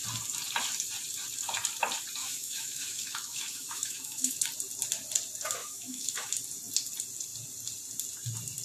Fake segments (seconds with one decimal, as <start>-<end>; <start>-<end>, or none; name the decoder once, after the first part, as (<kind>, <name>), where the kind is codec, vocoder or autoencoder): 2.2-4.4 (autoencoder, DAC-VAE); 5.6-6.3